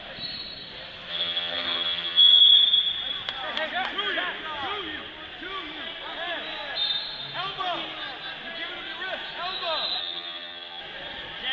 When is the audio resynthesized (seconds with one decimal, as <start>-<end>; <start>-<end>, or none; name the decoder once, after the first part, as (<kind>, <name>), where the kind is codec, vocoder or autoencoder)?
1.1-2.4 (vocoder, HiFi-GAN); 10.0-10.8